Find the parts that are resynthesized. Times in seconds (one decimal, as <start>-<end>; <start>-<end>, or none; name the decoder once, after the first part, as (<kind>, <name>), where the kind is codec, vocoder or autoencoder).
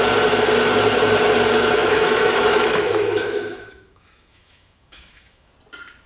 1.8-5.5 (autoencoder, DAC-VAE)